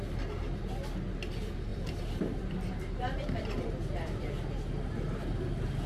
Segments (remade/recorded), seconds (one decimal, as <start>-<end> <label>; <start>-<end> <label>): 0.0-1.7 recorded; 1.7-4.5 remade; 4.5-5.9 recorded